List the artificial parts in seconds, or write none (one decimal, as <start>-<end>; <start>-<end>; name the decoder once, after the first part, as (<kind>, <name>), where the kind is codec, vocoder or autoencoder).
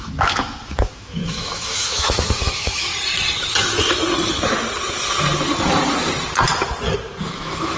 0.0-2.9 (autoencoder, DAC-VAE); 7.3-7.8